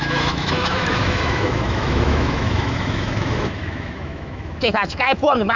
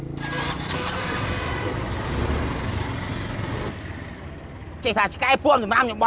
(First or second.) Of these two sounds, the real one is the second